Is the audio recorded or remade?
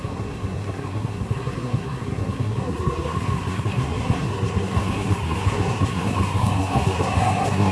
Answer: remade